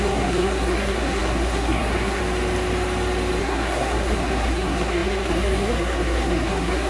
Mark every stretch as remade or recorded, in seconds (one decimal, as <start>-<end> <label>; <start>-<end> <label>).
0.0-2.2 remade; 2.2-3.4 recorded; 3.4-6.9 remade